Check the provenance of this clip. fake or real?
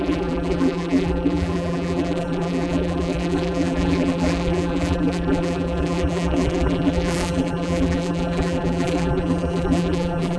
fake